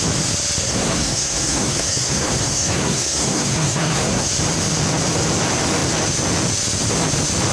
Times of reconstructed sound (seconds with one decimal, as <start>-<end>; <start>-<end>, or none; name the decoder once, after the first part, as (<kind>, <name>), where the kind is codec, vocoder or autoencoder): 0.6-4.3 (codec, SNAC)